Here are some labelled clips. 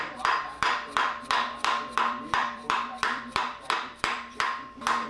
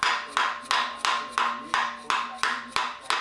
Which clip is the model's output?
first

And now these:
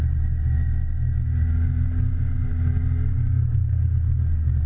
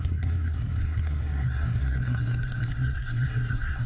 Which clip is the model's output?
second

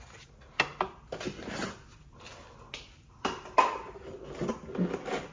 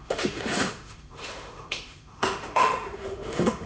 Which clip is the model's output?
second